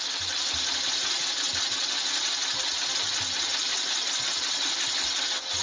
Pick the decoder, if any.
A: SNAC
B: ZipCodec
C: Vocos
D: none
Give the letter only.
D